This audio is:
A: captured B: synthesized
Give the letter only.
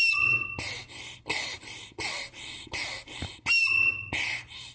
A